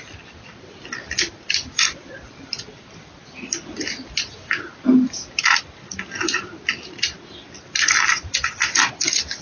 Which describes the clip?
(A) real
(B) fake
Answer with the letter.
A